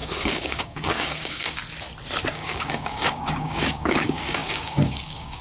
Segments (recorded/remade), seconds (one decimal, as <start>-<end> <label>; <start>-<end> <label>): 0.0-1.6 remade; 1.6-2.3 recorded; 2.3-5.4 remade